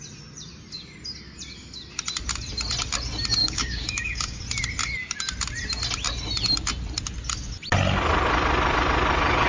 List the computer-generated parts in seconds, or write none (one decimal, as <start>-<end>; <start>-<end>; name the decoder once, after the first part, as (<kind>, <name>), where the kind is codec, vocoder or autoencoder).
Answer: 3.4-4.4 (codec, DAC)